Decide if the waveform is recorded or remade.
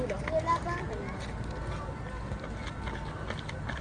recorded